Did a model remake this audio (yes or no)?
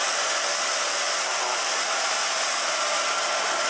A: no